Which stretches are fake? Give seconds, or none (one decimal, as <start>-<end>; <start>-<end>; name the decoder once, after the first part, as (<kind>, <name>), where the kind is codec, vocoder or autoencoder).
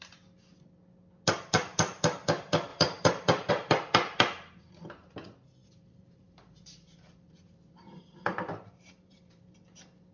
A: 2.7-3.5 (vocoder, BigVGAN v2); 5.6-9.4